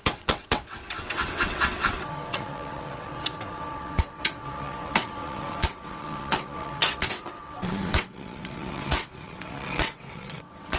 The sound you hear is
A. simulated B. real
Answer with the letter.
A